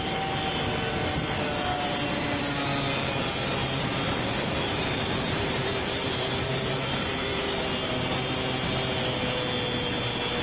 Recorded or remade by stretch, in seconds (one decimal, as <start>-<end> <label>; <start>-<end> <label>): 0.0-3.6 recorded; 3.6-7.6 remade; 7.6-10.4 recorded